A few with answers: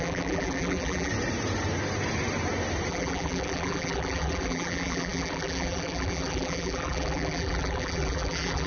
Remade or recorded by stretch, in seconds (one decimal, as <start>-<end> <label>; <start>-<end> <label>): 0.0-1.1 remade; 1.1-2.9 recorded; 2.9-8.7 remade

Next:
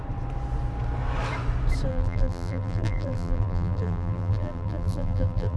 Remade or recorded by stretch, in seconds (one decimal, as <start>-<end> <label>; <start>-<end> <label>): 0.0-1.9 recorded; 1.9-5.6 remade

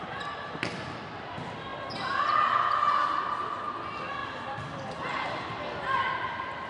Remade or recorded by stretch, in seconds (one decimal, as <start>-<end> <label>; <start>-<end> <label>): 0.0-6.7 recorded